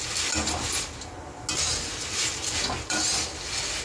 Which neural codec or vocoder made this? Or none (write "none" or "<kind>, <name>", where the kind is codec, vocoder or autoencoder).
none